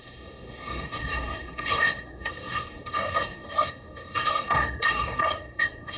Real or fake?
fake